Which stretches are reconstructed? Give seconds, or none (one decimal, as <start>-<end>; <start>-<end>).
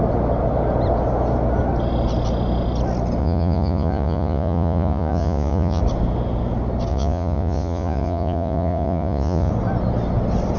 3.2-5.8; 6.9-9.5